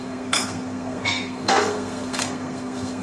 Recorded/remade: remade